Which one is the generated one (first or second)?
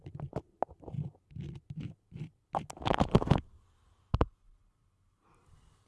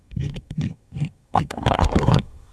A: second